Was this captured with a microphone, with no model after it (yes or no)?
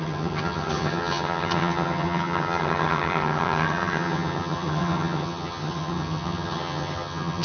no